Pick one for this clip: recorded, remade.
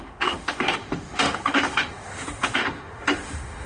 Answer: remade